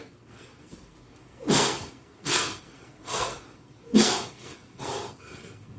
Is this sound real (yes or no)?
no